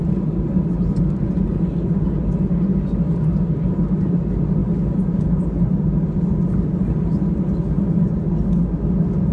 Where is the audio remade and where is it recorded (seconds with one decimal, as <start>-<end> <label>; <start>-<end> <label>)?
0.0-9.3 recorded